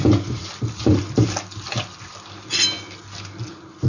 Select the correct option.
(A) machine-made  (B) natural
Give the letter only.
B